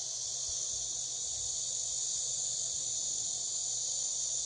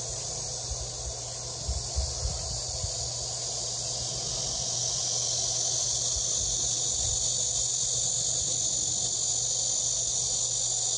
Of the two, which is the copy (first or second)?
first